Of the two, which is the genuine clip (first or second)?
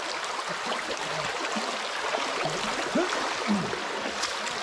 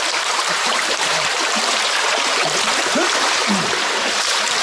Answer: first